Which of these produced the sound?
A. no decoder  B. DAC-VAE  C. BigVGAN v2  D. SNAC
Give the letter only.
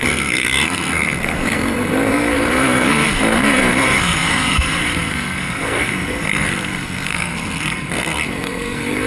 D